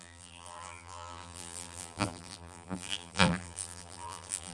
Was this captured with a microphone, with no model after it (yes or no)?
no